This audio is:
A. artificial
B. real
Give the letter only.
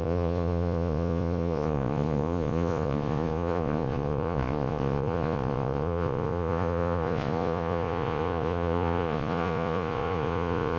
A